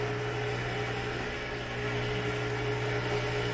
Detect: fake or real real